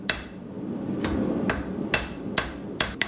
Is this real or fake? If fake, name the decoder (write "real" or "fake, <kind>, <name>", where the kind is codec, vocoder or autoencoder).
real